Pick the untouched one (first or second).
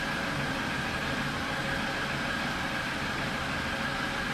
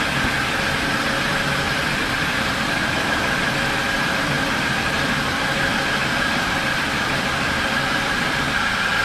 first